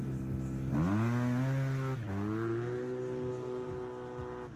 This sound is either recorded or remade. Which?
recorded